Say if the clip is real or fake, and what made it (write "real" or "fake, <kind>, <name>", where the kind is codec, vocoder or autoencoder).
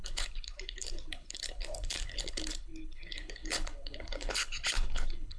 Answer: fake, codec, HILCodec